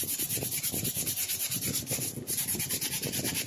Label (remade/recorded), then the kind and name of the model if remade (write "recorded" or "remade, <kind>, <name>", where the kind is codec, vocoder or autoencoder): remade, vocoder, BigVGAN v2